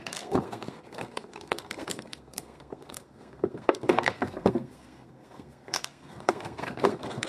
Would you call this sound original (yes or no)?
no